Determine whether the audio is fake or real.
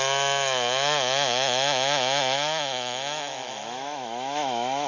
fake